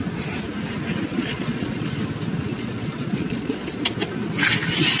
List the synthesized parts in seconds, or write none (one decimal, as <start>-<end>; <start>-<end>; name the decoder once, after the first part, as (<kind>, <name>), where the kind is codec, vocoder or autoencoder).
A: 1.1-1.9 (vocoder, Vocos); 2.5-3.8